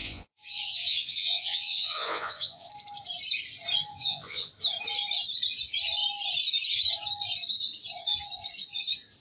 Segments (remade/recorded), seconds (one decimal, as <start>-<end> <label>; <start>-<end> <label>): 0.0-2.7 remade; 2.7-3.9 recorded; 3.9-4.5 remade; 4.5-9.2 recorded